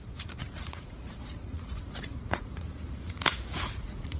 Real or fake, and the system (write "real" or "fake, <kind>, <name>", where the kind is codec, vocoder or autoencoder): fake, vocoder, Vocos